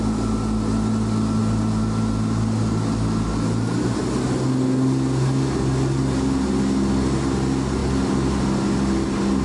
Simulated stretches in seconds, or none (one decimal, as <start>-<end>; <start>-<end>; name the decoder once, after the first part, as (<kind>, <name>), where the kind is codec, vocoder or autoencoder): none